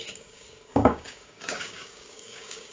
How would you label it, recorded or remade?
remade